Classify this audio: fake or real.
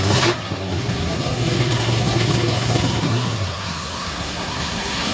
fake